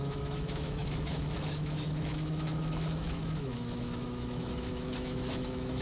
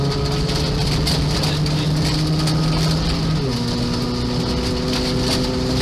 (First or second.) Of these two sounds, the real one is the second